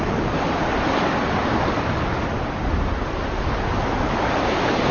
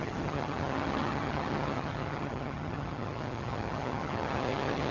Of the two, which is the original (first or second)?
first